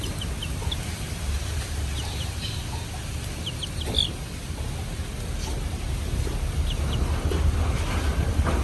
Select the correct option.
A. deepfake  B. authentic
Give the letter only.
B